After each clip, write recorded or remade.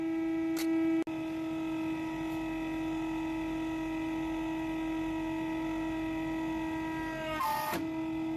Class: recorded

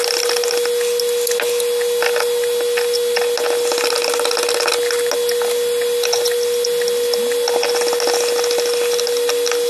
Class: recorded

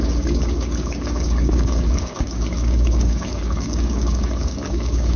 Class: remade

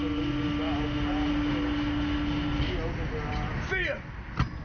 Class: recorded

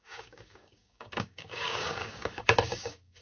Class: remade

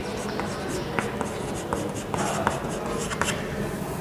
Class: recorded